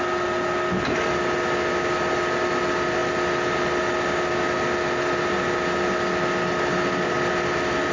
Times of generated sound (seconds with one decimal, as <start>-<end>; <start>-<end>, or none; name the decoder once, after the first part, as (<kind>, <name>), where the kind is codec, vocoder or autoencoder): none